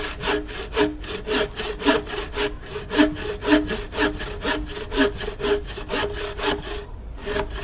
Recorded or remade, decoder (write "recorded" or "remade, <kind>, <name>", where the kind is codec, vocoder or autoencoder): recorded